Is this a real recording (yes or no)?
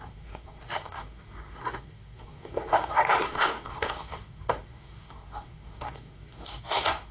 no